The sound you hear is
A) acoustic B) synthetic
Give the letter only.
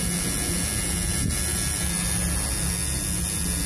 A